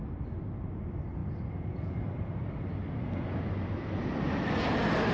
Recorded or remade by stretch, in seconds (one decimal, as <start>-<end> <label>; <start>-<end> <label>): 0.0-5.1 recorded